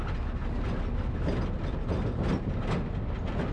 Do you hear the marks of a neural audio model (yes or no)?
no